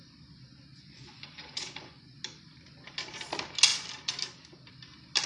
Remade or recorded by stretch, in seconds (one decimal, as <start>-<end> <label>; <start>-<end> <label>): 0.0-0.7 recorded; 0.7-2.2 remade; 2.2-5.3 recorded